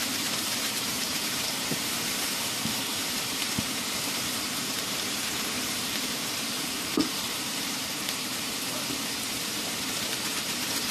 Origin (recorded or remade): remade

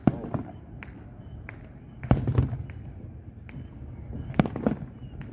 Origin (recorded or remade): recorded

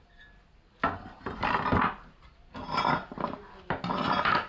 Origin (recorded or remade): recorded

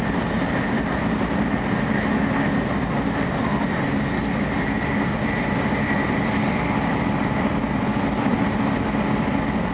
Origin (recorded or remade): recorded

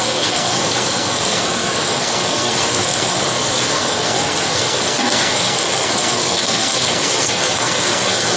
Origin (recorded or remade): remade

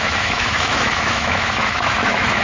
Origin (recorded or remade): remade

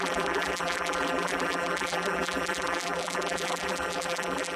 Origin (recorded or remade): remade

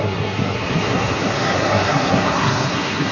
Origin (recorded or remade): remade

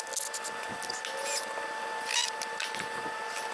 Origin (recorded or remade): recorded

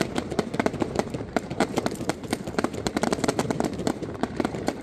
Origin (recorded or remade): remade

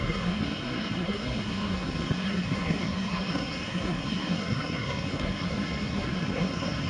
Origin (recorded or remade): remade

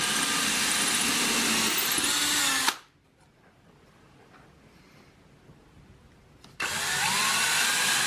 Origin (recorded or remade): recorded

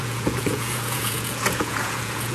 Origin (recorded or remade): remade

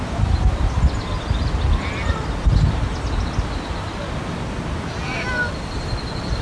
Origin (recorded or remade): recorded